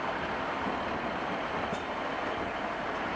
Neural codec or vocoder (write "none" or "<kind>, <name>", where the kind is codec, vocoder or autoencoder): none